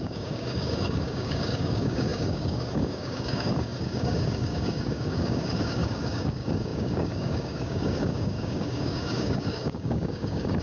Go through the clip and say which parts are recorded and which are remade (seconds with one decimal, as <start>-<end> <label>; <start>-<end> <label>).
0.0-10.6 remade